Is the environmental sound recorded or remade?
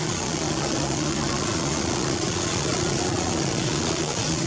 remade